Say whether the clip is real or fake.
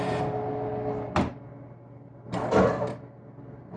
real